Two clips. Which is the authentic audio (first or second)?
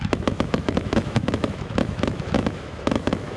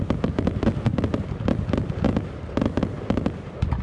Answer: second